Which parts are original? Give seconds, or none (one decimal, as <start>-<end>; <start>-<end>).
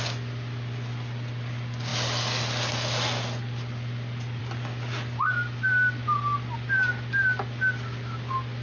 0.0-8.6